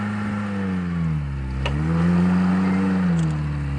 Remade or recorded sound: recorded